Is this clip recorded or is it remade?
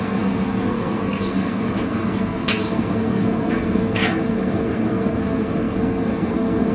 remade